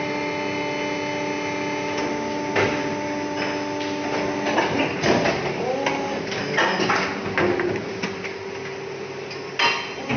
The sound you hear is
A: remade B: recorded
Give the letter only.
B